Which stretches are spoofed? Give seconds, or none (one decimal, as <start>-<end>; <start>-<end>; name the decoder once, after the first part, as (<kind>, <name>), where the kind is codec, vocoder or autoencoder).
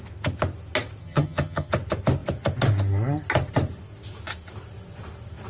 1.0-1.7 (vocoder, HiFi-GAN)